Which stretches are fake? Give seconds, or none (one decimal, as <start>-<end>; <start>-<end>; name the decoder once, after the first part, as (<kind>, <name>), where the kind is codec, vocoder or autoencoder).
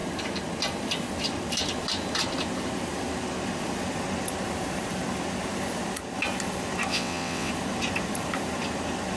6.9-7.5 (vocoder, WaveNeXt)